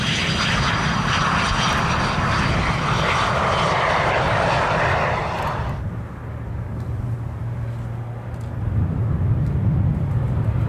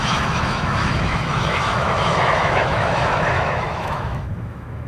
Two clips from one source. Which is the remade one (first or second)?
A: second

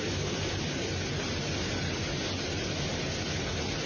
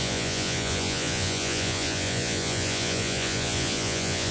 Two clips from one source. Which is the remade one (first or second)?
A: second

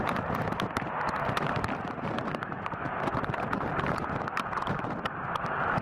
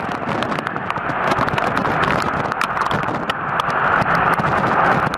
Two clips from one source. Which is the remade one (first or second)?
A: first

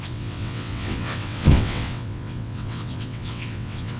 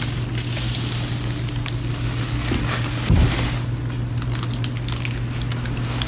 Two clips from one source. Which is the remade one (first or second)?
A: first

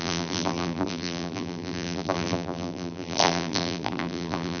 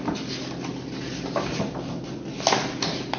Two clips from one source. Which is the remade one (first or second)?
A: first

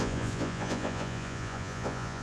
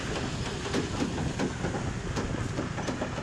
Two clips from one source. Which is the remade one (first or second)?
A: first